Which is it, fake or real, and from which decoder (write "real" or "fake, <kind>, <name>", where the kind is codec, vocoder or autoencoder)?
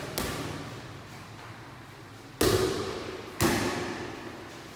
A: real